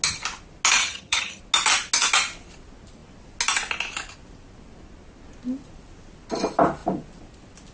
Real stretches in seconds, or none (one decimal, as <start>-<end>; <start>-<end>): 0.0-0.8; 1.4-7.7